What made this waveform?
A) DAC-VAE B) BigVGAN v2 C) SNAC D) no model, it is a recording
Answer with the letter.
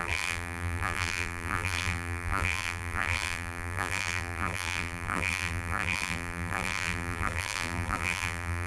B